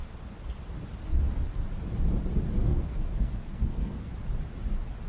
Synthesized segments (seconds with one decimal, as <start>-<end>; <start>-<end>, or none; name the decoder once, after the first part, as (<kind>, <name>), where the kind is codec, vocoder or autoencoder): 2.7-4.1 (codec, SNAC)